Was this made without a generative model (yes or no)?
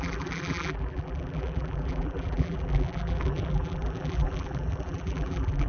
no